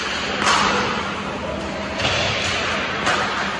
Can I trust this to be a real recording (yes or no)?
yes